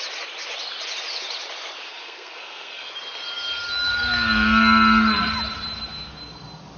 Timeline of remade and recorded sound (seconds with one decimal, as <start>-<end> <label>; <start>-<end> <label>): 0.0-1.9 recorded; 1.9-2.9 remade; 2.9-6.8 recorded